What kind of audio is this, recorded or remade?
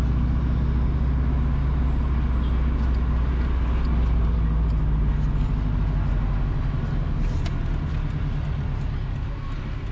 recorded